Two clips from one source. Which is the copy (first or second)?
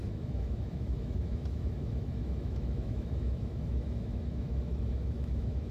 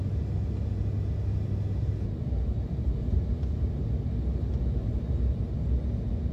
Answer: first